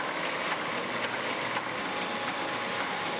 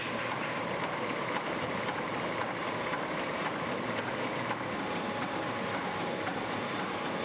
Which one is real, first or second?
first